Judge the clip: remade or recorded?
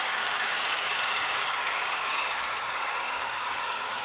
remade